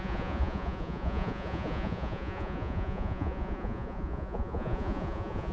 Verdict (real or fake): fake